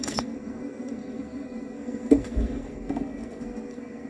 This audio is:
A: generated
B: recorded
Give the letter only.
A